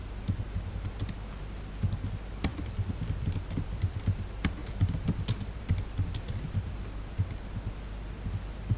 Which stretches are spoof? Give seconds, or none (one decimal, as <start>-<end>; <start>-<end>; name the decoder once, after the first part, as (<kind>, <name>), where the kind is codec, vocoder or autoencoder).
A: 2.5-4.0 (vocoder, BigVGAN v2); 4.6-7.1